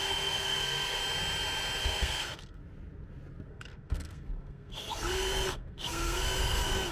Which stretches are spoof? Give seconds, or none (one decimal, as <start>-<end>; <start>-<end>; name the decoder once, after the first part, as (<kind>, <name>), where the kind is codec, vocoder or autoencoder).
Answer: 0.0-1.0 (codec, SNAC); 1.8-2.6; 3.5-6.9